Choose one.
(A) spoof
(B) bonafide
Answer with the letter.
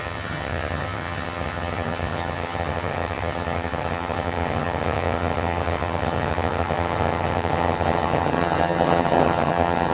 A